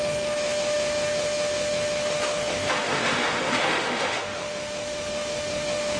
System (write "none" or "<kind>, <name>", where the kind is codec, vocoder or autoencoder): autoencoder, DAC-VAE